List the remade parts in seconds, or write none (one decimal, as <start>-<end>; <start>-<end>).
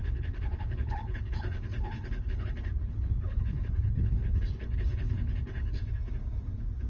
0.0-5.8